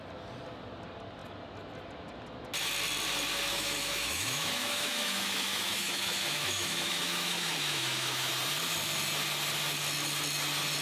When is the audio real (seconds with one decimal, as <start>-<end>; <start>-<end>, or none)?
0.0-3.5; 8.3-10.8